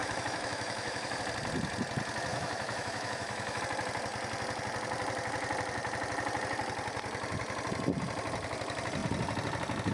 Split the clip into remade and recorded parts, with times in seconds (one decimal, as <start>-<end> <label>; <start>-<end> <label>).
0.0-1.2 remade; 1.2-2.3 recorded; 2.3-3.6 remade; 3.6-9.9 recorded